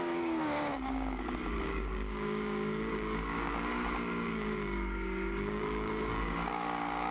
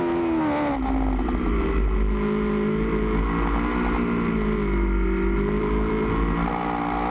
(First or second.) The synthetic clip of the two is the first